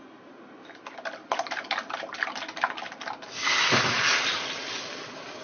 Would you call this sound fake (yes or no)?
no